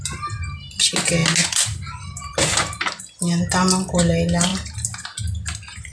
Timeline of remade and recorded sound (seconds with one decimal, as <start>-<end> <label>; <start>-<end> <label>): 0.0-5.9 recorded